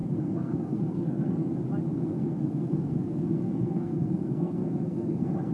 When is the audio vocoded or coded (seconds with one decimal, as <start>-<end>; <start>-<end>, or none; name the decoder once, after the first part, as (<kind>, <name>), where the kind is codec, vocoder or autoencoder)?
0.0-1.5 (codec, SNAC); 1.9-5.5